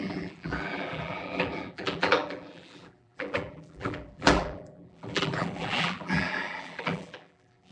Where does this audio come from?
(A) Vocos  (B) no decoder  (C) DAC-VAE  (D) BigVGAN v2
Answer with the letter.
D